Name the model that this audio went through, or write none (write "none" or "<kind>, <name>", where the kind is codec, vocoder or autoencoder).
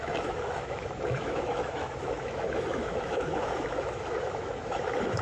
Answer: autoencoder, DAC-VAE